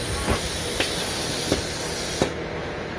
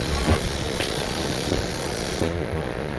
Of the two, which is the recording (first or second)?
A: first